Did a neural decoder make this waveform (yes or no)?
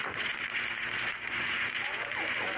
yes